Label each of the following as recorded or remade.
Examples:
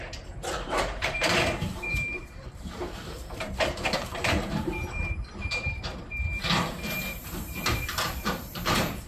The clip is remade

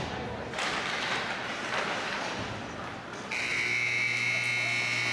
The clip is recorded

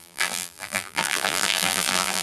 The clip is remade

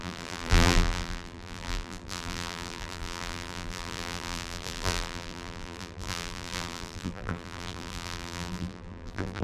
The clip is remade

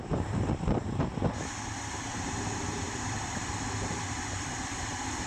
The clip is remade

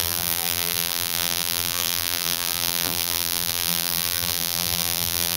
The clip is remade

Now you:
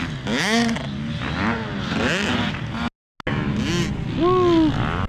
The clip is recorded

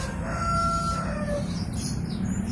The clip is remade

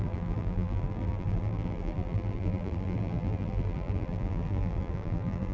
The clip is remade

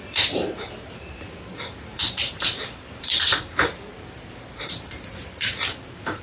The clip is remade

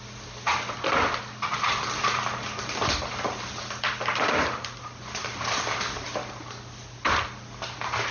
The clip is recorded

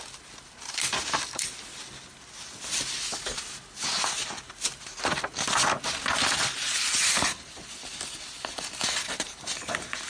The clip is recorded